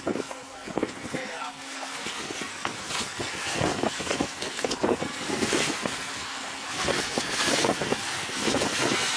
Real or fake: fake